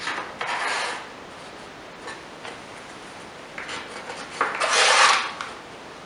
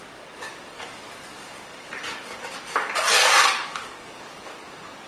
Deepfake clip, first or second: second